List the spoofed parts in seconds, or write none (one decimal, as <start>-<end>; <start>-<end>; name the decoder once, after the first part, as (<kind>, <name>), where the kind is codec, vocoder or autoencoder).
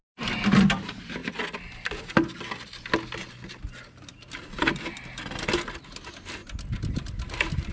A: none